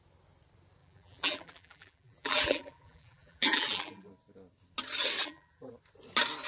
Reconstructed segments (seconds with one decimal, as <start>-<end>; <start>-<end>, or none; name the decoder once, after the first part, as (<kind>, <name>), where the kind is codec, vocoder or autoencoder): 0.8-4.1 (vocoder, BigVGAN v2); 5.2-5.7